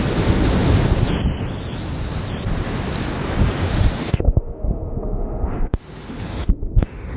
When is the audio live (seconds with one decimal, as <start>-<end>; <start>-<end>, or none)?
0.0-3.6